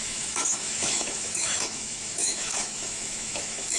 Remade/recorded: remade